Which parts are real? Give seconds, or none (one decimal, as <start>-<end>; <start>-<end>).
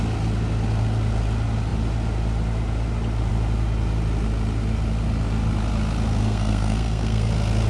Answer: 0.0-6.2; 7.3-7.7